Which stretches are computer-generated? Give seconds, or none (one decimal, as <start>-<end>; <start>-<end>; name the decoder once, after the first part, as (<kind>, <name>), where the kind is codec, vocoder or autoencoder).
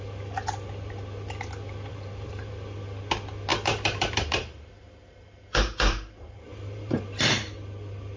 1.9-2.5 (vocoder, BigVGAN v2); 3.5-7.0